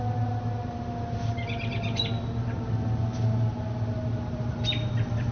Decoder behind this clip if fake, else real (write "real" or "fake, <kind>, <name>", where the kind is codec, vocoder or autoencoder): real